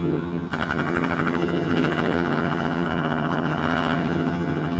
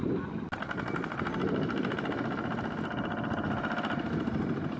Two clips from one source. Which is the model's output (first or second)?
first